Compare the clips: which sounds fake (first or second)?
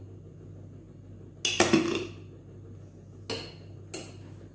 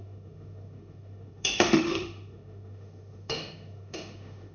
second